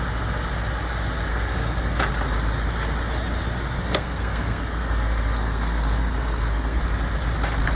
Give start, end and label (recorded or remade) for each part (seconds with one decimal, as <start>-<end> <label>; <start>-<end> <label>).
0.0-1.3 recorded; 1.3-2.0 remade; 2.0-3.8 recorded; 3.8-6.8 remade; 6.8-7.8 recorded